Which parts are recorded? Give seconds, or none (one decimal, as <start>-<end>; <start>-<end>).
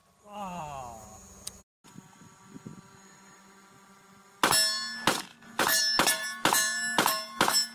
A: 0.6-5.3; 5.8-7.7